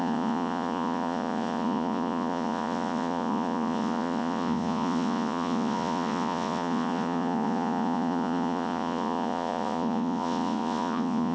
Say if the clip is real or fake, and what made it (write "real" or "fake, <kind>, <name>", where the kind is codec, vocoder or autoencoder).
fake, vocoder, Vocos